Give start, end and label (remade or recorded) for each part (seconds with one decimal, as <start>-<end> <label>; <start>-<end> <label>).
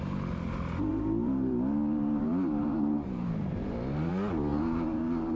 0.0-0.9 recorded; 0.9-4.1 remade; 4.1-4.5 recorded; 4.5-5.4 remade